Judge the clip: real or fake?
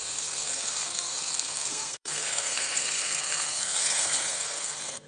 fake